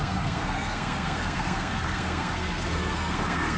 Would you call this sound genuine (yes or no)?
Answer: no